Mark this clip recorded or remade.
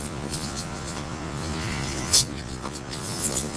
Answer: remade